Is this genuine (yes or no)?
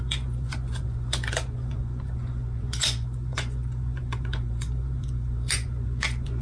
no